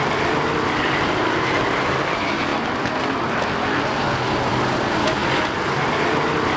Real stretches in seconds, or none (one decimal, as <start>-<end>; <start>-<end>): 0.0-5.2; 6.0-6.6